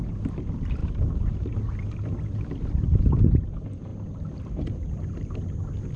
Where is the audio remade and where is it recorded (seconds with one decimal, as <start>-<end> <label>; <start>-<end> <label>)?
0.0-3.9 recorded; 3.9-5.3 remade; 5.3-6.0 recorded